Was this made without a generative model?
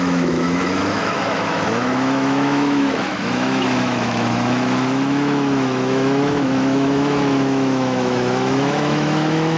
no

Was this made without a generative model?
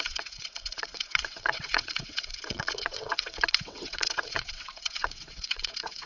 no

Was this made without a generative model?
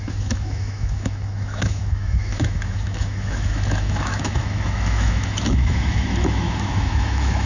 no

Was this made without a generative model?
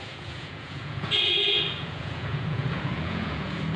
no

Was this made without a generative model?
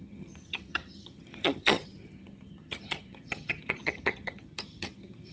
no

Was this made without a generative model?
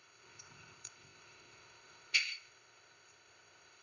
no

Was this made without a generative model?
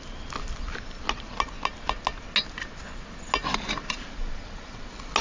yes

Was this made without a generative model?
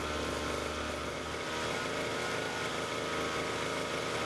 yes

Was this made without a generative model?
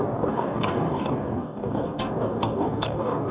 no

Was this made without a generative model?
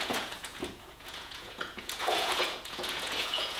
no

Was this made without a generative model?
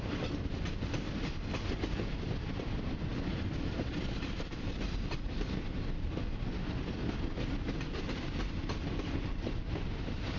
no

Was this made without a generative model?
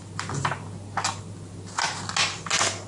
yes